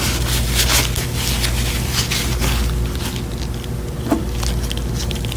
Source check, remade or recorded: recorded